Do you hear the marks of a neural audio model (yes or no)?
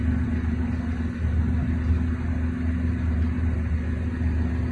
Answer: no